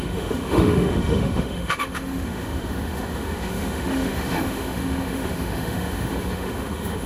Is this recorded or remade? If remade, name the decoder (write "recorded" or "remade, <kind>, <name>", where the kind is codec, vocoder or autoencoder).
remade, autoencoder, DAC-VAE